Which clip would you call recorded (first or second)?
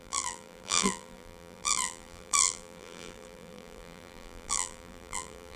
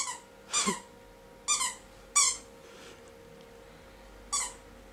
second